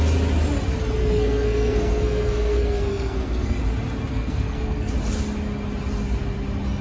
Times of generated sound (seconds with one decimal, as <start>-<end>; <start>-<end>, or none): 1.0-3.6; 4.1-4.9